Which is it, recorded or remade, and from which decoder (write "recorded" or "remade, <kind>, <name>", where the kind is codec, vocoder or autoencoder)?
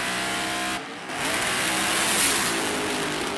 recorded